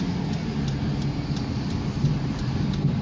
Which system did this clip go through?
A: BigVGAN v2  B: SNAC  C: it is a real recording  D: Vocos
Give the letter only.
C